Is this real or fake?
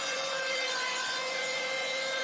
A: fake